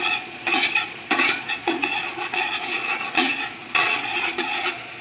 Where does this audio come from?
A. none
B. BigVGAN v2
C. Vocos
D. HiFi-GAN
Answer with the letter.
C